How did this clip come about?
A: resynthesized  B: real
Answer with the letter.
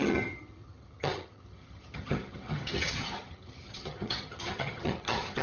A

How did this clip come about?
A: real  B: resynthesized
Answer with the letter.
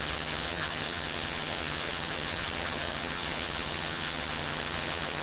B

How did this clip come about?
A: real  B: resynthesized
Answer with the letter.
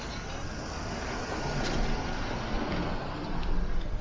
A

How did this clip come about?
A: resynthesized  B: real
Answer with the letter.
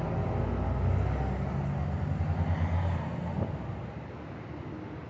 B